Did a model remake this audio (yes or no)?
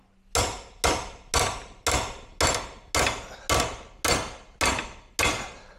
no